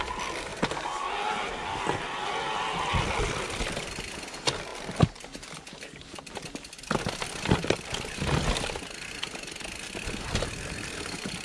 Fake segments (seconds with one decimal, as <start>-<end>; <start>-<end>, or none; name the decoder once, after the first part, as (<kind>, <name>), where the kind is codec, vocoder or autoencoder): none